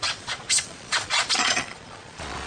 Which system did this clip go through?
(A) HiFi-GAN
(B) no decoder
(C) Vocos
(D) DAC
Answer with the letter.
C